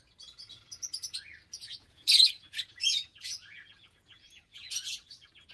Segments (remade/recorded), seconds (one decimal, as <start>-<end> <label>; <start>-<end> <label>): 0.0-1.6 recorded; 1.6-4.9 remade; 4.9-5.5 recorded